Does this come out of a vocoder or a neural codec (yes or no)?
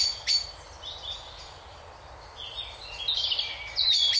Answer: no